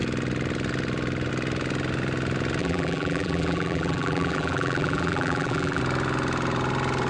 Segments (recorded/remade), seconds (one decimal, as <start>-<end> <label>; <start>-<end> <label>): 0.0-2.6 recorded; 2.6-5.8 remade; 5.8-7.1 recorded